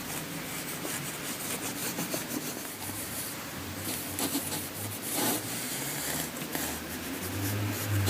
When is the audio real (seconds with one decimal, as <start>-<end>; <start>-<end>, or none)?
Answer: 0.0-1.8; 5.8-8.1